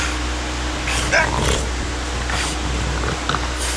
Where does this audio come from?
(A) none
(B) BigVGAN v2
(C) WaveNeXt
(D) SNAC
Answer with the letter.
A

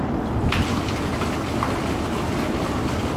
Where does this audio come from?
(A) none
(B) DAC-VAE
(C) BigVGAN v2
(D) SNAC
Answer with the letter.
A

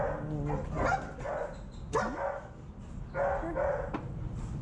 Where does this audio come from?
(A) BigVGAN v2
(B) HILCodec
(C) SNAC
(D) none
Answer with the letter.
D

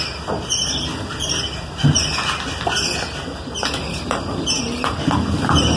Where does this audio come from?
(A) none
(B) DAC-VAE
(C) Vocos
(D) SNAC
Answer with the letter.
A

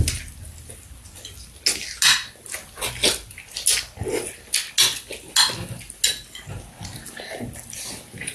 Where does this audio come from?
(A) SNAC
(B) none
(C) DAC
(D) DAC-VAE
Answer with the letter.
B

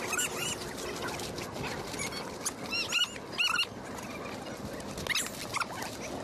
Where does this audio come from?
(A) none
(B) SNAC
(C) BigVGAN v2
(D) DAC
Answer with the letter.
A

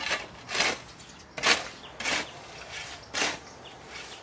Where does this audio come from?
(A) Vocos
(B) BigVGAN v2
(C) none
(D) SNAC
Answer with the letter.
C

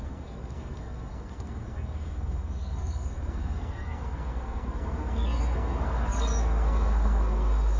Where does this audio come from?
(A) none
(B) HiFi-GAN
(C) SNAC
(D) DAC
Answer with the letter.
C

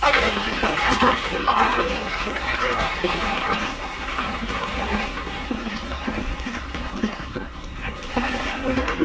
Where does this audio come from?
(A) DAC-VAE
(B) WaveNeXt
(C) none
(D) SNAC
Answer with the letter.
D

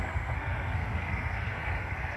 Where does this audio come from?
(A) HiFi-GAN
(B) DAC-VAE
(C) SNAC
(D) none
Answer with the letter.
C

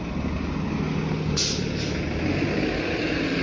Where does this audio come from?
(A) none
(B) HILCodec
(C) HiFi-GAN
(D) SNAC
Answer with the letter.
A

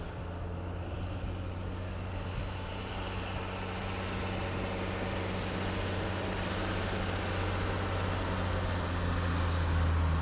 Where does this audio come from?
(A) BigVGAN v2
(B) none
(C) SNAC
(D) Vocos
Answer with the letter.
B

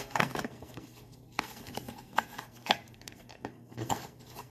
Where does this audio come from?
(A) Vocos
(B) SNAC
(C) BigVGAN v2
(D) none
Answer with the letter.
B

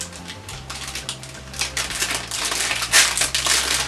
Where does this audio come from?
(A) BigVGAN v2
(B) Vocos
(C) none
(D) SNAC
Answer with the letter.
C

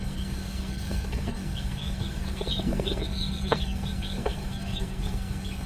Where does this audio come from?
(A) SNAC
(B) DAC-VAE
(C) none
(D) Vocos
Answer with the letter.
A